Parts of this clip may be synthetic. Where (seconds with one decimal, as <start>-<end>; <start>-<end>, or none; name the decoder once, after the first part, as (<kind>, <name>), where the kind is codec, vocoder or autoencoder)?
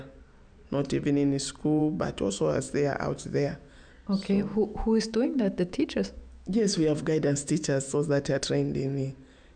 1.8-3.7 (autoencoder, DAC-VAE); 4.5-8.4